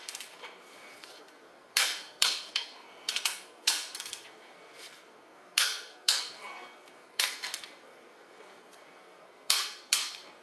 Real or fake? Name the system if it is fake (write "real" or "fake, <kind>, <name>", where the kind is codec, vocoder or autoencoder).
fake, codec, SNAC